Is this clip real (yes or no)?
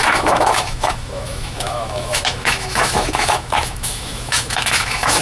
no